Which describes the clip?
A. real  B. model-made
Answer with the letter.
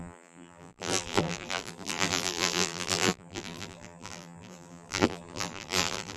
B